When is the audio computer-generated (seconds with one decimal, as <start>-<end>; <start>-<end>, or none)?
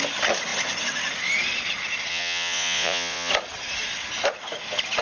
2.1-3.3